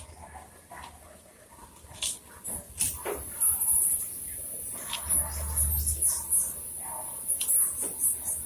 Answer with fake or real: real